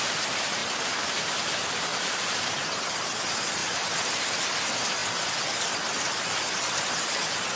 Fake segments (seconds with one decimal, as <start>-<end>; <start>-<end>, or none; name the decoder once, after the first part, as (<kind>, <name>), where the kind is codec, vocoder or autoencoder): 1.9-2.5 (vocoder, BigVGAN v2); 3.6-4.3